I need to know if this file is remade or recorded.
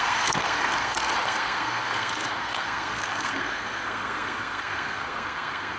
remade